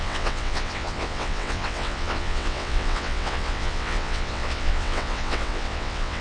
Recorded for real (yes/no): no